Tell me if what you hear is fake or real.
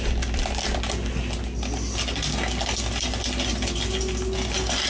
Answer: real